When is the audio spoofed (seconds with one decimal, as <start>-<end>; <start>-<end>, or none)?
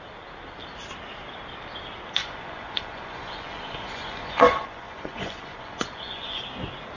2.2-6.4